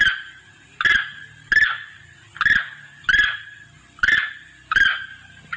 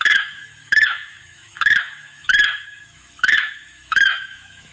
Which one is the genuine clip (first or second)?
first